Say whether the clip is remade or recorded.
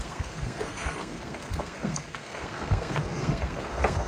remade